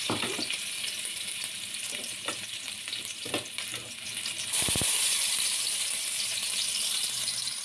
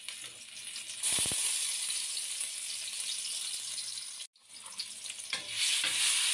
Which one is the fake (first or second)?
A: first